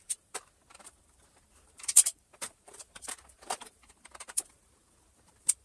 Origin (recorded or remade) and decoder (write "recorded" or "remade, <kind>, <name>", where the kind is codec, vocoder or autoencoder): remade, vocoder, BigVGAN v2